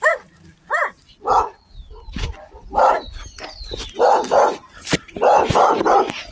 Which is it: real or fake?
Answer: real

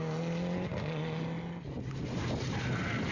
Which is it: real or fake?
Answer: real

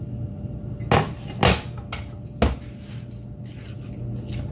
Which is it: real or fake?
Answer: real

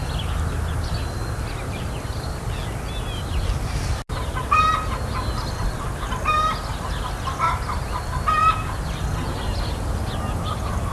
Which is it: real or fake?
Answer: real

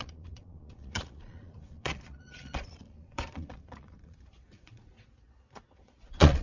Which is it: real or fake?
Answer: fake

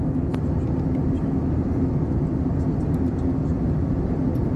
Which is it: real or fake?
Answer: real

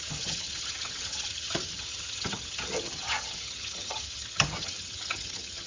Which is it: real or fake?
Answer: fake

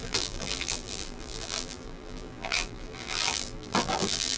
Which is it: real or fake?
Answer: fake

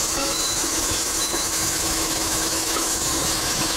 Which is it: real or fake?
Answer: fake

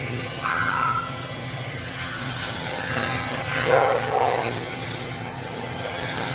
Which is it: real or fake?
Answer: fake